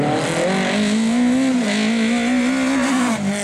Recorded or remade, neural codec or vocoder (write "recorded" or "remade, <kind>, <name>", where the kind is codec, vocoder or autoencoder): recorded